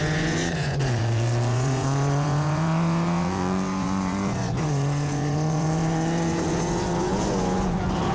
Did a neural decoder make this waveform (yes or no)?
yes